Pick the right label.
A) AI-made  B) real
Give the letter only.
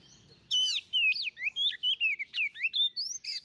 B